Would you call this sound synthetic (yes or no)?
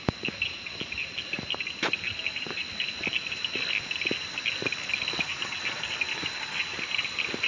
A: no